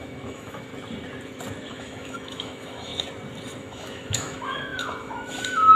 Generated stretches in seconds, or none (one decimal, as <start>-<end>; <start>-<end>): 0.0-0.7; 1.7-2.9; 3.6-5.8